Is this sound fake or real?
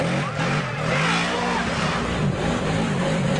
real